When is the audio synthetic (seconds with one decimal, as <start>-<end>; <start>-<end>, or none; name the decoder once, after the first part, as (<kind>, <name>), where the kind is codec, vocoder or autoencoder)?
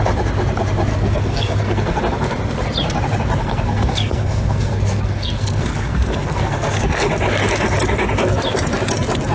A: 0.9-2.0 (codec, SNAC); 3.4-7.1